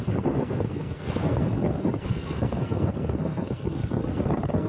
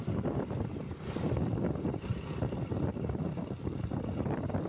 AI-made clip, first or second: first